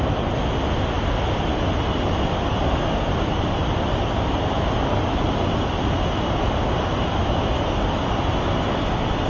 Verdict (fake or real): real